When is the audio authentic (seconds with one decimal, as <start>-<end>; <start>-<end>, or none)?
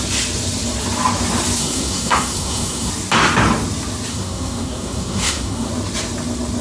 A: 0.0-1.6; 2.9-4.1; 5.7-6.6